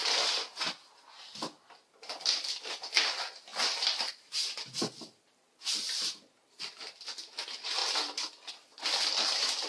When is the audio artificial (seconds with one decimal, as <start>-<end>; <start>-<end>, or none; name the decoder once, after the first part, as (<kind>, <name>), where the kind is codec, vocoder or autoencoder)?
7.8-8.5 (vocoder, BigVGAN v2)